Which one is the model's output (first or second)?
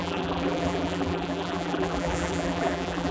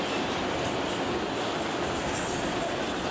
first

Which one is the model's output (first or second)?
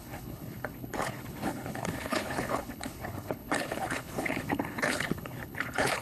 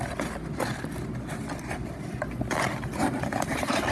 first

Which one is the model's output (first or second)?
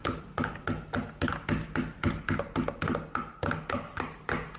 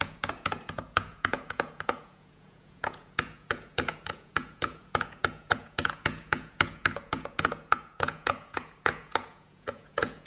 second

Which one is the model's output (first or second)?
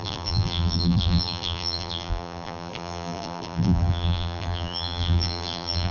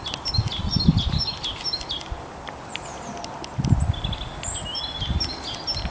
first